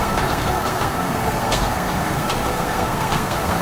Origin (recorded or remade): remade